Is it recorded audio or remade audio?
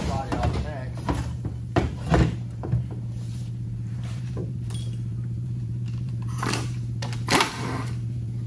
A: remade